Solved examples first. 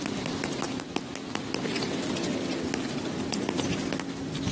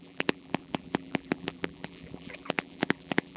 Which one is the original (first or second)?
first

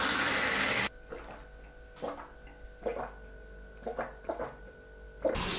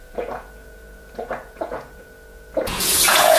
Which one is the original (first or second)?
first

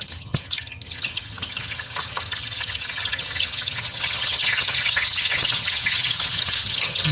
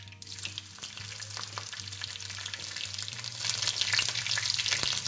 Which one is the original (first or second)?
second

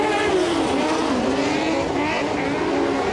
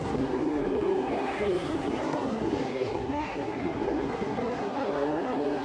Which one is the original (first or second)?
first